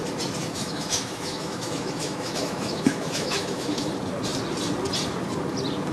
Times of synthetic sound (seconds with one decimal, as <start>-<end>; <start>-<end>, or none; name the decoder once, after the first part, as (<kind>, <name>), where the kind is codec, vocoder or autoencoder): 0.4-3.9 (autoencoder, DAC-VAE)